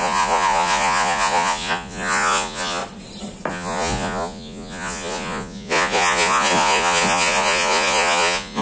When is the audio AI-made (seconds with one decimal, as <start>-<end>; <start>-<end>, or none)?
0.0-2.8; 3.5-8.6